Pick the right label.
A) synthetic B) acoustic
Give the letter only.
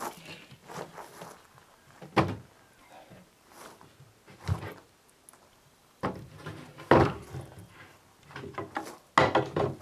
B